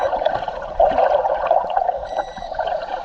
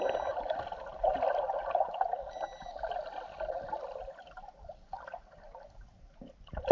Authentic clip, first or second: second